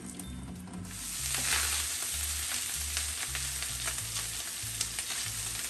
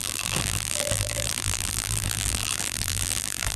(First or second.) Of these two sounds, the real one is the first